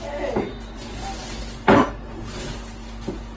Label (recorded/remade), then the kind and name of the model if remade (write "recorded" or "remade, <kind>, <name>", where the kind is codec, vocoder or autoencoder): recorded